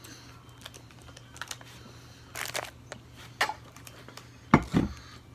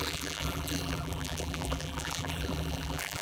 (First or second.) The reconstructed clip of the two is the second